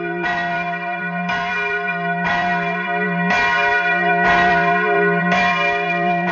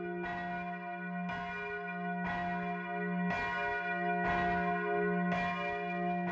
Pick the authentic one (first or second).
second